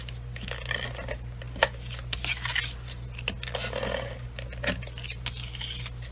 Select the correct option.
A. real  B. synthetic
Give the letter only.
A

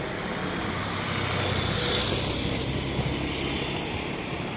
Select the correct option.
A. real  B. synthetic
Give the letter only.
A